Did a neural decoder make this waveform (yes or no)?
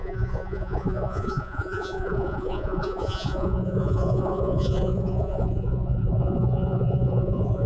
yes